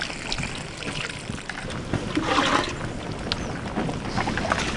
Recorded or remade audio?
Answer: recorded